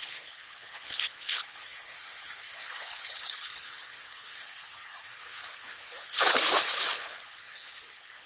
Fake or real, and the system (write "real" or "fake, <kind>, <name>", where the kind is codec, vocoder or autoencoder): fake, codec, HILCodec